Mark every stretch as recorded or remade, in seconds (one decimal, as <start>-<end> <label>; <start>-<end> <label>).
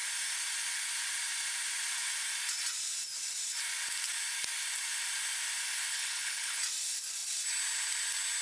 0.0-5.9 recorded; 5.9-6.6 remade; 6.6-8.4 recorded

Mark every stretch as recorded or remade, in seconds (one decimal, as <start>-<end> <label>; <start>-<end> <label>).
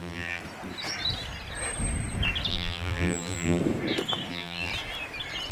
0.0-0.4 remade; 0.4-2.5 recorded; 2.5-3.6 remade; 3.6-4.3 recorded; 4.3-4.7 remade; 4.7-5.5 recorded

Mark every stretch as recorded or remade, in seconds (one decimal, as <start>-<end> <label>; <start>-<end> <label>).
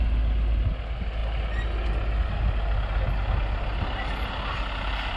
0.0-5.2 recorded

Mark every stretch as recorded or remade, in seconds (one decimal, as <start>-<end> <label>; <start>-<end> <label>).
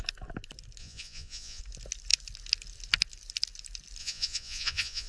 0.0-0.8 recorded; 0.8-1.6 remade; 1.6-4.0 recorded; 4.0-5.1 remade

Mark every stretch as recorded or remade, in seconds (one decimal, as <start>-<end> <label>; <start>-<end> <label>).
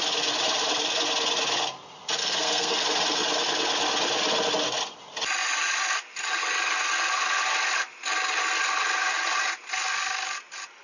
0.0-2.2 recorded; 2.2-2.8 remade; 2.8-10.8 recorded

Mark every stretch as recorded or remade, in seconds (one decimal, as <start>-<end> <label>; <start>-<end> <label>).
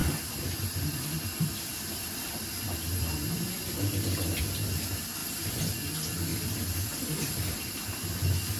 0.0-4.4 remade; 4.4-5.2 recorded; 5.2-5.7 remade; 5.7-6.3 recorded; 6.3-7.8 remade; 7.8-8.6 recorded